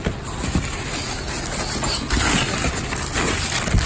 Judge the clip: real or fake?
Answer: fake